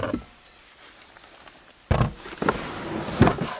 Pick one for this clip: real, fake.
real